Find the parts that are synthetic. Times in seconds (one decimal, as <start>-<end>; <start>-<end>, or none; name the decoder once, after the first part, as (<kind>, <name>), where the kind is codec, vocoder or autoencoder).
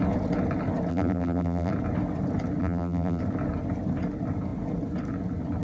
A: 0.9-1.7 (vocoder, BigVGAN v2); 2.6-3.2